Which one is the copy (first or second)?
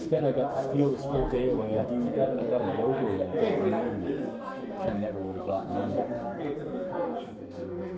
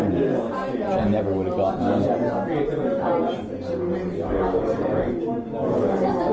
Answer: first